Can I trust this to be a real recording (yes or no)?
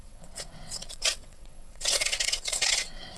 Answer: no